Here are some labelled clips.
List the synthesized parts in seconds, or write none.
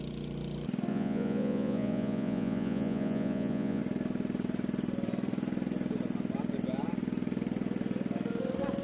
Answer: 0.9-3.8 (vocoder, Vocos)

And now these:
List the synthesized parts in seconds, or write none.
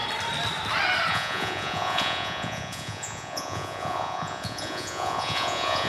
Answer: 1.1-5.9 (vocoder, Vocos)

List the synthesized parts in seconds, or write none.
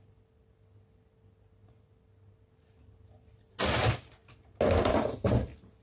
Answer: none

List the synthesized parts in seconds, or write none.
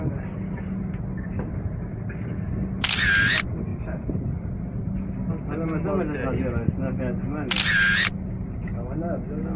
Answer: none